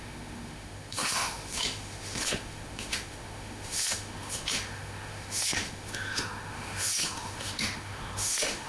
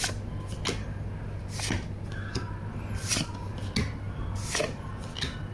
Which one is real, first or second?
second